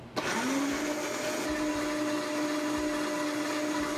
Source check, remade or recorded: recorded